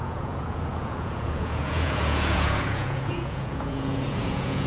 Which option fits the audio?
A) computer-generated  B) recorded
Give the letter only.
A